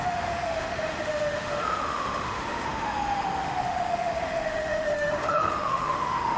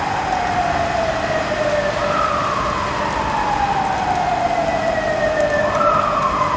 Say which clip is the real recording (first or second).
second